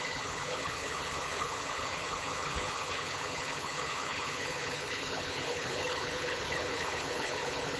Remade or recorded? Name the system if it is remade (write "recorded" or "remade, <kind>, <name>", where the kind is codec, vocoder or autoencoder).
remade, codec, HILCodec